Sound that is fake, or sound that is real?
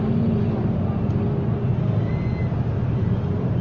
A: real